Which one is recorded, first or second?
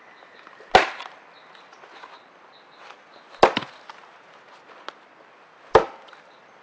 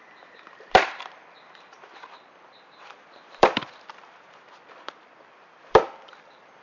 first